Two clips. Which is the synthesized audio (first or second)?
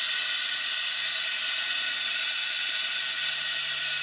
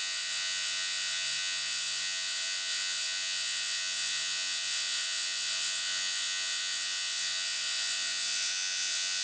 second